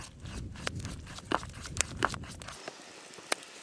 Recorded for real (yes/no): yes